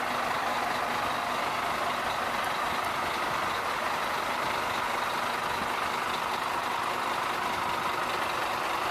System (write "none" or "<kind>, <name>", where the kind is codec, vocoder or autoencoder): none